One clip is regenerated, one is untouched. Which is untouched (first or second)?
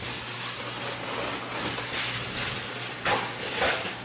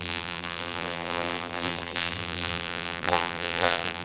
first